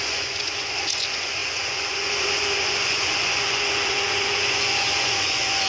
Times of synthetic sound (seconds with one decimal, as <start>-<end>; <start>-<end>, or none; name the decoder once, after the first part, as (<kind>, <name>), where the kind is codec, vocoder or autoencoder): 0.0-5.7 (vocoder, Vocos)